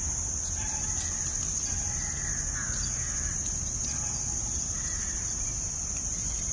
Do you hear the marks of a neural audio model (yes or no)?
no